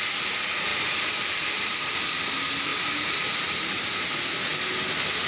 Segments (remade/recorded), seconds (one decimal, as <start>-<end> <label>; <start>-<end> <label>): 0.0-0.7 recorded; 0.7-2.2 remade; 2.2-2.7 recorded; 2.7-4.0 remade; 4.0-5.3 recorded